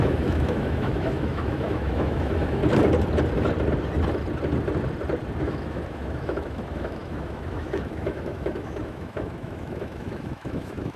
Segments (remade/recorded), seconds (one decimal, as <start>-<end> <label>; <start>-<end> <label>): 0.0-2.6 remade; 2.6-5.4 recorded; 5.4-11.0 remade